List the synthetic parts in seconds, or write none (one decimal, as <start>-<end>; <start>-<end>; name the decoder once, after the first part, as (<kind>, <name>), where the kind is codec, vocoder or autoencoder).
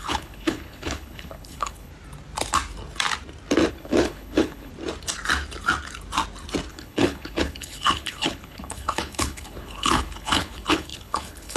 0.0-1.9 (codec, HILCodec); 3.7-4.7; 6.7-11.6